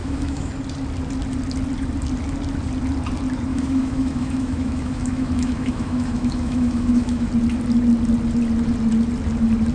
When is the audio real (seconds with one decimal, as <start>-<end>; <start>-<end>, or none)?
0.5-3.5; 7.3-9.7